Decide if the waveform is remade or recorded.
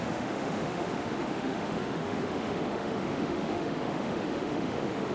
remade